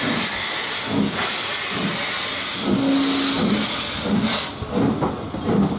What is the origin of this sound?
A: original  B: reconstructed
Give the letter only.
A